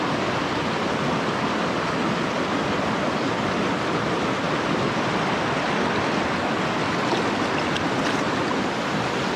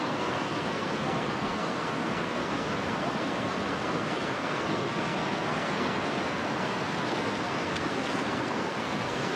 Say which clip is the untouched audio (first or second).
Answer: first